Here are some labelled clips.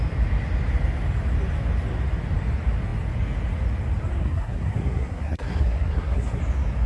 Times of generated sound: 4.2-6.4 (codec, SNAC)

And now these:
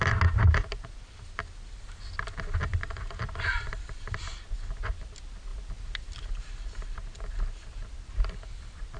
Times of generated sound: 2.7-4.0 (vocoder, BigVGAN v2)